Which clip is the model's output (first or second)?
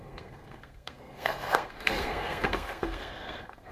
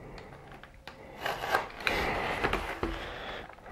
first